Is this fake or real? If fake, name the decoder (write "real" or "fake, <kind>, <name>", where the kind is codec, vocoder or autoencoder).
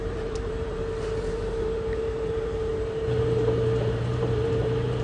fake, vocoder, BigVGAN v2